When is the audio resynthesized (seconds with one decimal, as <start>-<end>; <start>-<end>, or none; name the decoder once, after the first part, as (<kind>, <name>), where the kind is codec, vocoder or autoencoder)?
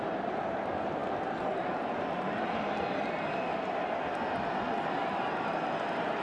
0.0-1.0 (vocoder, BigVGAN v2); 1.8-6.2